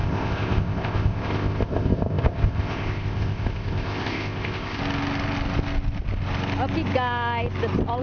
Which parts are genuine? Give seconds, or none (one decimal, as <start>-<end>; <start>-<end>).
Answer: 4.8-8.0